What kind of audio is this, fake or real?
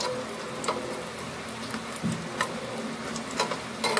real